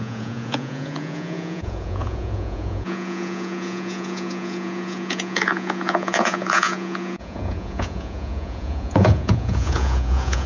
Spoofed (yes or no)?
yes